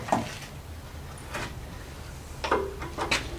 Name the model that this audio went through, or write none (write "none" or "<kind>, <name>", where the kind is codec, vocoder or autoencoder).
none